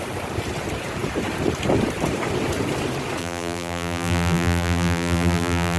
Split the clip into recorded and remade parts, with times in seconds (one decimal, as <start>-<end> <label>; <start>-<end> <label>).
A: 0.0-3.2 recorded; 3.2-5.8 remade

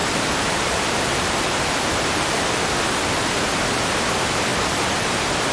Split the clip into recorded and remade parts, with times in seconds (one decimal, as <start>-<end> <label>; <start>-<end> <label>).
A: 0.0-2.7 remade; 2.7-5.5 recorded

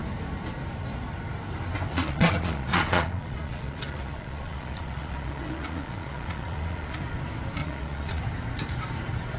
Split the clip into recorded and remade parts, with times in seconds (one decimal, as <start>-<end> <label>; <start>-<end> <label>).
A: 0.0-1.9 recorded; 1.9-7.0 remade; 7.0-7.6 recorded; 7.6-8.2 remade; 8.2-9.4 recorded

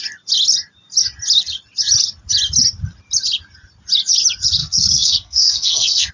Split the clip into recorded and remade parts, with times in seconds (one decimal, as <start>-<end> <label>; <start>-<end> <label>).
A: 0.0-4.6 recorded; 4.6-6.1 remade

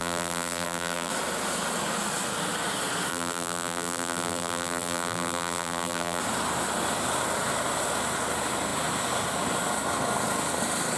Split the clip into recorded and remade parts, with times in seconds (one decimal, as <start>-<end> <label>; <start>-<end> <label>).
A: 0.0-1.1 remade; 1.1-3.1 recorded; 3.1-6.2 remade; 6.2-11.0 recorded

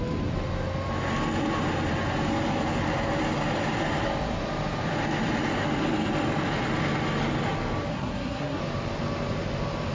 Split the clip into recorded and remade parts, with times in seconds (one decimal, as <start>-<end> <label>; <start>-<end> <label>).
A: 0.0-7.9 recorded; 7.9-8.6 remade; 8.6-9.9 recorded